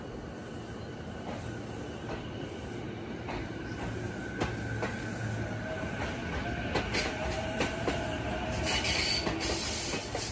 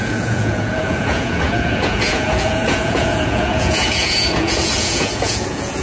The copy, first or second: second